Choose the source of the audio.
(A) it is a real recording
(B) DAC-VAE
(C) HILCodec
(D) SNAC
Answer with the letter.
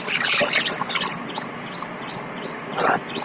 A